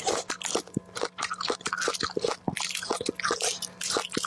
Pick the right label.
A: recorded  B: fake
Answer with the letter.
A